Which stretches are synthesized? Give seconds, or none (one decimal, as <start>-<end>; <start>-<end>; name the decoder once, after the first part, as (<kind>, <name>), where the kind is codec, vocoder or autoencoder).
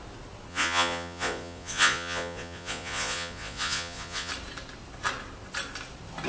0.5-4.3 (vocoder, Vocos)